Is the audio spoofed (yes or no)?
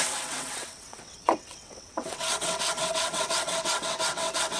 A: yes